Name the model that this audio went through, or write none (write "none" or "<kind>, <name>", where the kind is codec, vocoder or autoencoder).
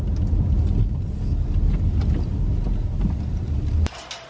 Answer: none